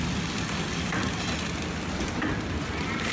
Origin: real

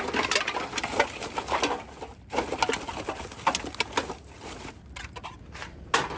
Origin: real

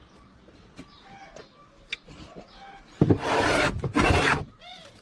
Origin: real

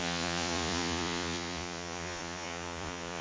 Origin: fake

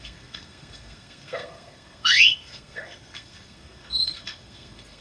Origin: fake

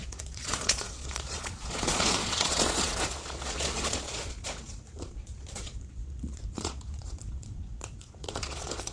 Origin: fake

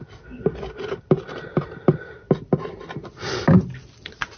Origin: real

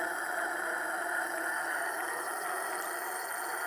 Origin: fake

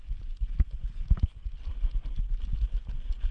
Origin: real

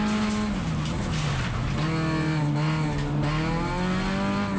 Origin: real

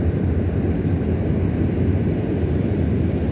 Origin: real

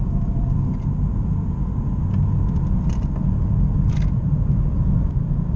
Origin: real